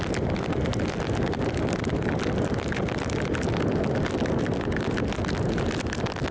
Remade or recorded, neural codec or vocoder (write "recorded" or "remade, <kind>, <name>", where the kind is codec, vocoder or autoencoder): recorded